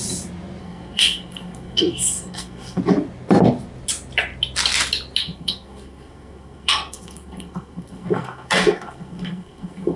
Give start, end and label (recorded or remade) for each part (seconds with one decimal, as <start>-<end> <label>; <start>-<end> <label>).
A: 0.0-0.6 recorded; 0.6-2.8 remade; 2.8-5.2 recorded; 5.2-10.0 remade